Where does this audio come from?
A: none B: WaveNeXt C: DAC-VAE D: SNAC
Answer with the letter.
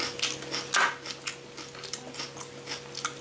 A